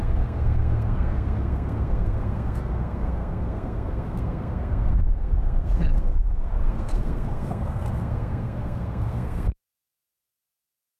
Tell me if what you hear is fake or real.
fake